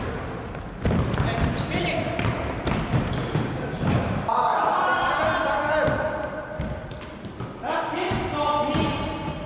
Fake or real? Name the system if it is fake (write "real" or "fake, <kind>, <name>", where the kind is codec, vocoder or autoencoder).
real